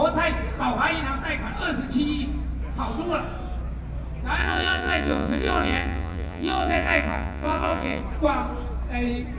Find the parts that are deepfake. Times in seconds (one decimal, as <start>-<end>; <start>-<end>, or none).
4.4-8.0